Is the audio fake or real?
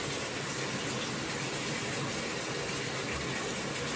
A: real